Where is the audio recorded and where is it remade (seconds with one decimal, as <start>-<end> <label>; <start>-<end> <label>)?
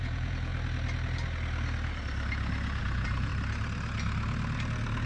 0.0-0.5 remade; 0.5-2.8 recorded; 2.8-3.3 remade; 3.3-5.1 recorded